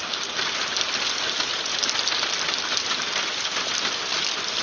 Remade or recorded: recorded